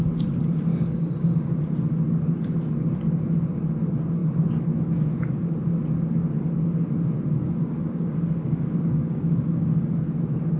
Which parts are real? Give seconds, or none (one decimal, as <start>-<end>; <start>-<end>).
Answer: 0.0-0.7; 1.5-7.4; 10.0-10.6